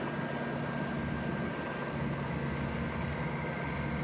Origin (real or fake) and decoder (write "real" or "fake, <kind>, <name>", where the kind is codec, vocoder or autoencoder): real